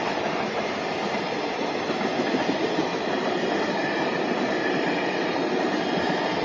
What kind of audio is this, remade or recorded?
recorded